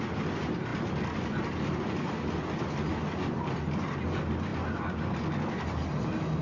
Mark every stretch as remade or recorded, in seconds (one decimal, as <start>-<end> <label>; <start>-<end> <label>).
0.0-6.4 recorded